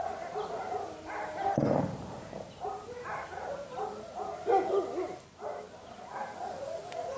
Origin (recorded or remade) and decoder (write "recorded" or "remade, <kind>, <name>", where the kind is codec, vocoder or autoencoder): recorded